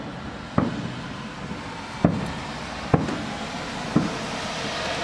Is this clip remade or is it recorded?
recorded